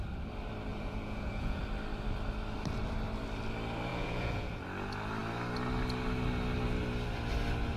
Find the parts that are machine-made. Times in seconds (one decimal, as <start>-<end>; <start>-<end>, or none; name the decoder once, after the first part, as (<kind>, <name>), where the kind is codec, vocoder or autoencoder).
0.7-1.6 (vocoder, Vocos); 3.9-4.6